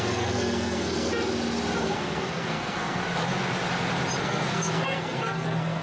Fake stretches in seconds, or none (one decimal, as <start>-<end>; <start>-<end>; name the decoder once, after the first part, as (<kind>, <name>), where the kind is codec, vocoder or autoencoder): 0.0-1.1 (codec, SNAC); 1.8-3.0; 4.2-5.8